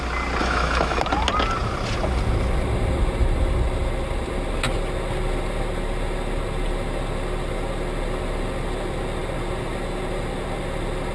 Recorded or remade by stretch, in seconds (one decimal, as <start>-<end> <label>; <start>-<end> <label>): 0.0-0.4 recorded; 0.4-1.0 remade; 1.0-11.1 recorded